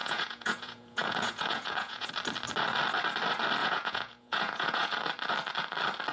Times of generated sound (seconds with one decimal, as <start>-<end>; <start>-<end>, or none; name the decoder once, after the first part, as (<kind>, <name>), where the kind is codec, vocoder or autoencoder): 0.0-2.1 (vocoder, Vocos); 3.6-4.9